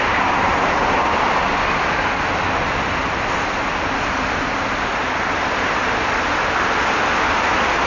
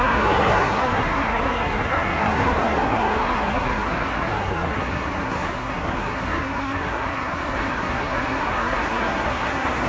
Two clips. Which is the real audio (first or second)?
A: first